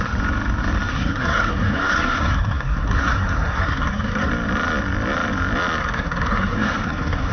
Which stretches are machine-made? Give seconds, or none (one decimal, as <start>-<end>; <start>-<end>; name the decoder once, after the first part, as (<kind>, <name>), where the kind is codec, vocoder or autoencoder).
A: 0.9-4.3 (codec, SNAC); 5.8-7.3